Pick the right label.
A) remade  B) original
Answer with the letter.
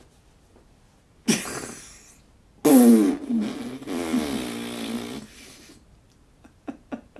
B